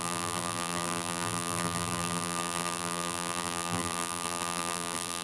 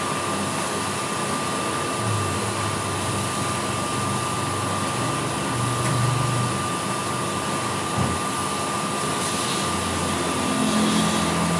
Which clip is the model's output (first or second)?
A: first